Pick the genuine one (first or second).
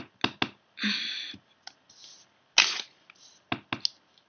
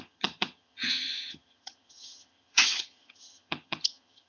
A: first